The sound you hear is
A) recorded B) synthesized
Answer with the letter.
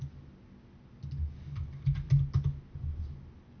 A